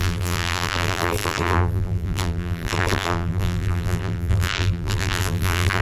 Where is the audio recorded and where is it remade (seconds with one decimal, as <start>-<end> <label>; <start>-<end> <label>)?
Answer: 0.0-5.8 remade